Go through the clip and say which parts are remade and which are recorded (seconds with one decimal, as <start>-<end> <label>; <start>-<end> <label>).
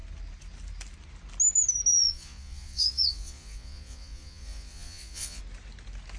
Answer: 0.0-1.9 recorded; 1.9-5.4 remade; 5.4-6.2 recorded